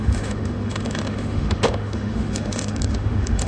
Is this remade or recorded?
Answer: remade